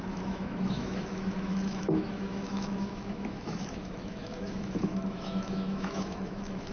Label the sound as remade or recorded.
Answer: remade